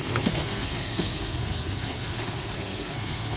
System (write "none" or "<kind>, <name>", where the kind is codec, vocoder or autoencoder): codec, SNAC